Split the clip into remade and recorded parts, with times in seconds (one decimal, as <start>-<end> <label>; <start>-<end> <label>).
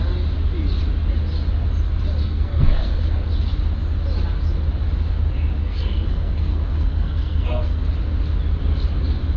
0.0-2.2 recorded; 2.2-3.3 remade; 3.3-5.6 recorded; 5.6-7.8 remade; 7.8-9.4 recorded